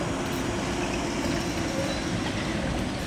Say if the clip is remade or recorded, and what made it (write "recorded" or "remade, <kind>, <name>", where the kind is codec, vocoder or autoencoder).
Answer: recorded